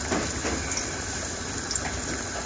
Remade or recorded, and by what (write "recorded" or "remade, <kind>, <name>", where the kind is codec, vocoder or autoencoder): recorded